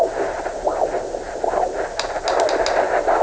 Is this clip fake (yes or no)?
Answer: no